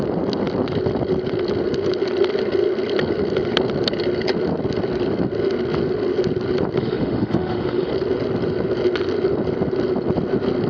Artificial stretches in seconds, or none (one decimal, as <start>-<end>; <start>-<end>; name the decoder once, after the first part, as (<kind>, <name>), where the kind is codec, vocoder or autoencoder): 6.8-7.9 (autoencoder, DAC-VAE)